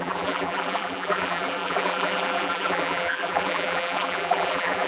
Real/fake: fake